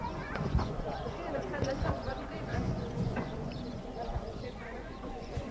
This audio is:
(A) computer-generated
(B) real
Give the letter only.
A